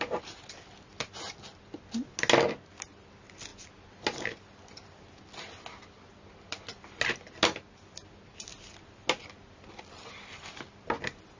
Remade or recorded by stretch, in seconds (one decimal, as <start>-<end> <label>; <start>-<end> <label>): 0.0-11.4 recorded